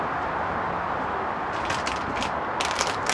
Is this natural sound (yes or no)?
yes